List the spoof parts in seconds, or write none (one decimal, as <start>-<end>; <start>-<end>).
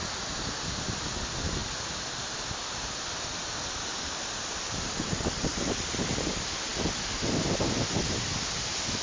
3.9-6.3